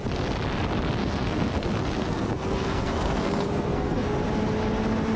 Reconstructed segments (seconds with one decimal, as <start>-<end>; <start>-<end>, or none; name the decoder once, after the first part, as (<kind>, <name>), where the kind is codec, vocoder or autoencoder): 1.0-4.1 (codec, SNAC)